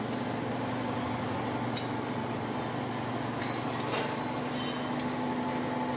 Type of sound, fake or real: real